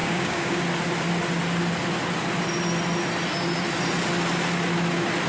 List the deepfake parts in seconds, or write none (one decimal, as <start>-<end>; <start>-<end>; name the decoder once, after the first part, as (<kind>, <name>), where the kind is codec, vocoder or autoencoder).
0.0-0.6 (codec, DAC)